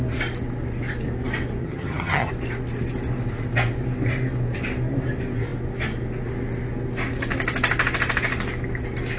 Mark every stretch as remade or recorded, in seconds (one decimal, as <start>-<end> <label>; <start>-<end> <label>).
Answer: 0.0-1.6 recorded; 1.6-2.3 remade; 2.3-9.2 recorded